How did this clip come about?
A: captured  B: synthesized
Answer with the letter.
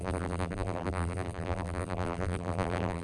B